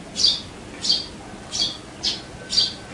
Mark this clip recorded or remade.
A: recorded